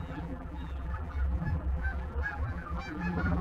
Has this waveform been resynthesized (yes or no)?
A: yes